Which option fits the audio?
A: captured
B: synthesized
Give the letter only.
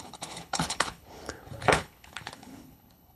B